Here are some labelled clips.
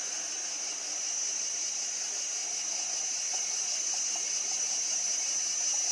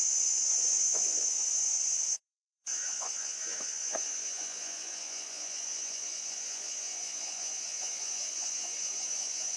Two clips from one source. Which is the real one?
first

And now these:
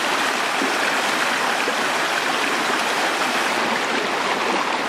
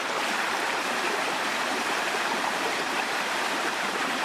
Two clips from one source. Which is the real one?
first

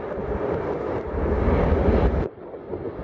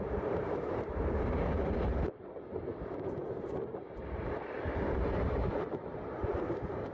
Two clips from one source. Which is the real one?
first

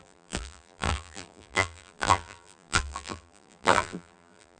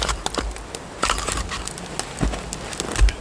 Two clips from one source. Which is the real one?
second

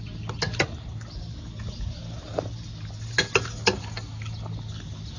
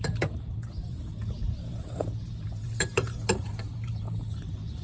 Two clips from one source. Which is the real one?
first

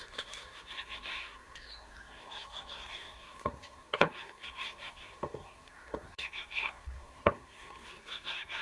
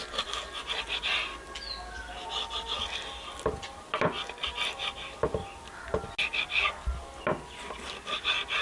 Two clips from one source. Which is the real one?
second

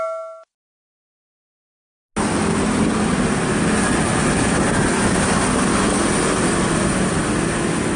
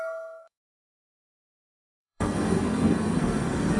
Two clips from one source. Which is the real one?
first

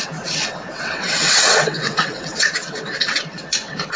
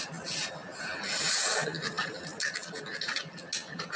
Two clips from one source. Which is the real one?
second